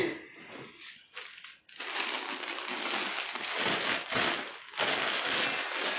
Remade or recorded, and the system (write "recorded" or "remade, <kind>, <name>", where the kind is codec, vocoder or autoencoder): recorded